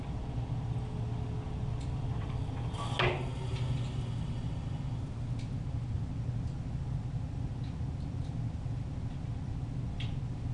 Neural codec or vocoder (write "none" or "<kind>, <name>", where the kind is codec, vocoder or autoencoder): none